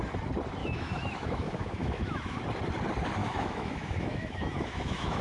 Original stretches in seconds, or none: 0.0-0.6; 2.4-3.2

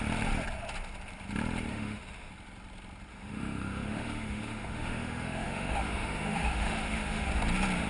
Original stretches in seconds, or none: 0.0-1.7; 2.3-3.1; 7.3-7.9

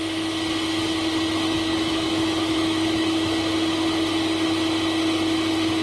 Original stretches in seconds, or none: 0.0-1.7; 3.4-5.8

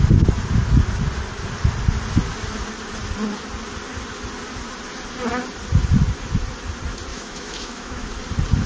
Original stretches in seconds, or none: 0.0-7.1; 8.1-8.7